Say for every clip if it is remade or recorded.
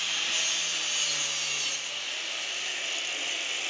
recorded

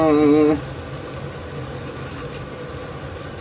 recorded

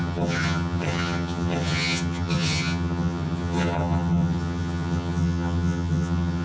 remade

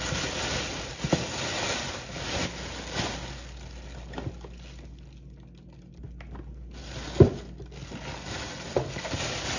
recorded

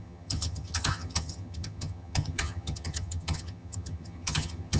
remade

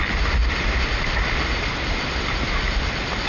recorded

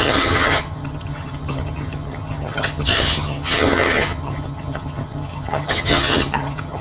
remade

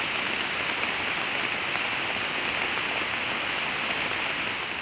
recorded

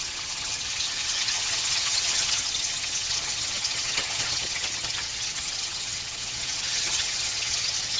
remade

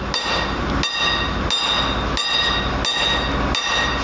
recorded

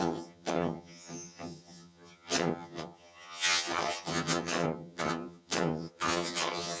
remade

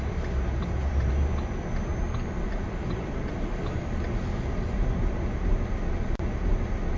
recorded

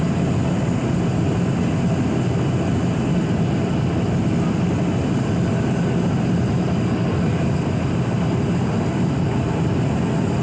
recorded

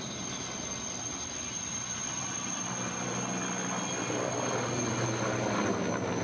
recorded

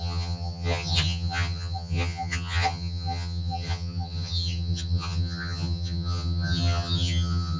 remade